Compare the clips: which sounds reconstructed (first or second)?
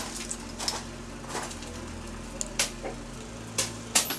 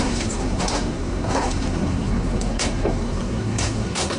second